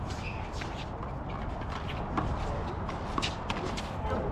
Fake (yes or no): no